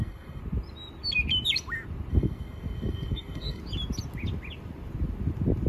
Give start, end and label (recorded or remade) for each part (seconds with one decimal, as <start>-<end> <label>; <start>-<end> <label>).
0.0-0.4 remade; 0.4-2.1 recorded; 2.1-3.6 remade; 3.6-5.7 recorded